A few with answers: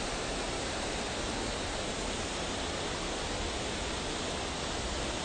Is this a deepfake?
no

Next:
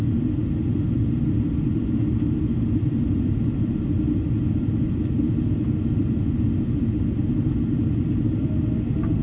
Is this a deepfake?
no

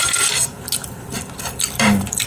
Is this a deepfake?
yes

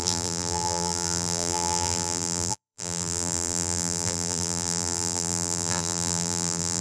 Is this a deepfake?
yes